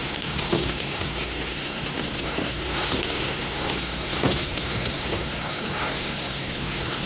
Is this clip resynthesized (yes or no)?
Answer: yes